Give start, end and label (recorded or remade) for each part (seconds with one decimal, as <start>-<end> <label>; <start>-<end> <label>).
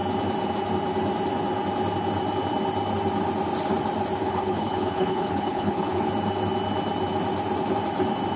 0.0-4.2 recorded; 4.2-6.1 remade; 6.1-8.4 recorded